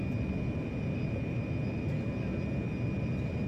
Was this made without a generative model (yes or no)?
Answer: yes